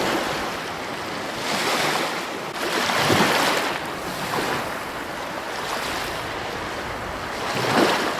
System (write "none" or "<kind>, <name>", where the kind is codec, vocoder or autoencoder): none